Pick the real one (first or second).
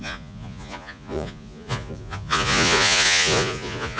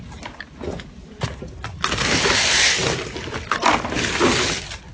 second